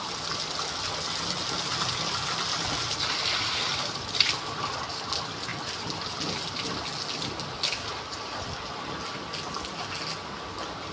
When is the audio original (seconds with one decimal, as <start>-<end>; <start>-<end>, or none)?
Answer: 0.0-10.9